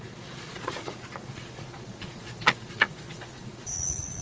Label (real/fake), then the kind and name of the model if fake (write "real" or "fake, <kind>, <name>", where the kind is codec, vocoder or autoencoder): fake, vocoder, Vocos